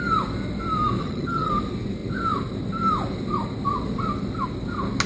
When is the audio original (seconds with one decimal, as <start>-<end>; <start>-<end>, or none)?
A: 0.0-1.0; 1.5-5.1